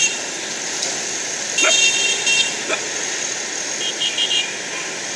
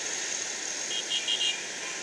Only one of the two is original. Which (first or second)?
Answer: second